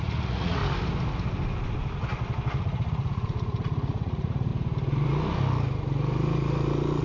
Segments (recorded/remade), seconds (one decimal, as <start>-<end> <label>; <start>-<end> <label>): 0.0-0.6 remade; 0.6-2.6 recorded; 2.6-4.5 remade; 4.5-7.0 recorded

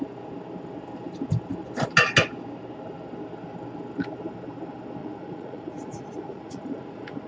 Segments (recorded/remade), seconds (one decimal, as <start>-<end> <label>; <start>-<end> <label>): 0.0-5.0 recorded; 5.0-7.3 remade

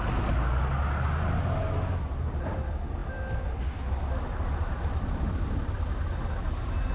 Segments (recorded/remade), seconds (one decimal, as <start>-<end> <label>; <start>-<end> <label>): 0.0-6.9 recorded

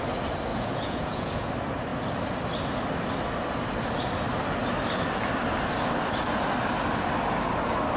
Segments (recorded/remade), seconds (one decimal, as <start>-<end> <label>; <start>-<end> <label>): 0.0-0.5 recorded; 0.5-1.5 remade; 1.5-8.0 recorded

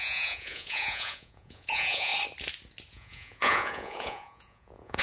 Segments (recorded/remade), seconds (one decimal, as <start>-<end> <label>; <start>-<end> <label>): 0.0-2.1 remade; 2.1-2.9 recorded; 2.9-5.0 remade

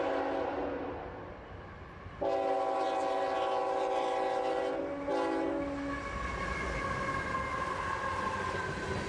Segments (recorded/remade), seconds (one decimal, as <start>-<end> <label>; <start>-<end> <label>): 0.0-9.1 recorded

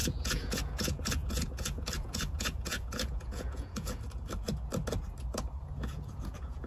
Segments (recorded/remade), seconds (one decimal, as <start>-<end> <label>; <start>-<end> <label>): 0.0-4.0 remade; 4.0-5.6 recorded; 5.6-6.7 remade